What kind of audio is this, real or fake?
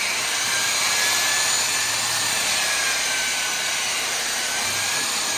fake